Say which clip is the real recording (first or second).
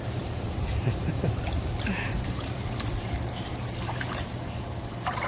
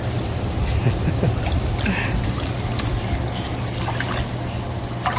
second